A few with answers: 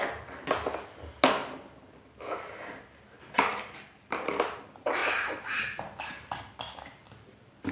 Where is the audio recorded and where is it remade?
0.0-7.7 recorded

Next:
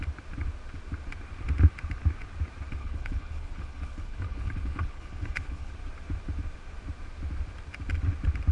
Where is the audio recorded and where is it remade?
0.0-2.8 recorded; 2.8-5.7 remade; 5.7-8.5 recorded

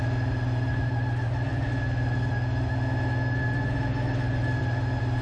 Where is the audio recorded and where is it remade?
0.0-5.2 recorded